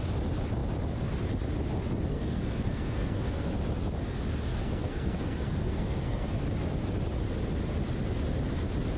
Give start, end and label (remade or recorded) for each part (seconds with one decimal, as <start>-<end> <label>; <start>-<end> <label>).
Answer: 0.0-2.1 recorded; 2.1-3.5 remade; 3.5-4.5 recorded; 4.5-6.4 remade; 6.4-9.0 recorded